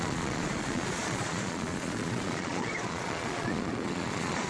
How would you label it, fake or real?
fake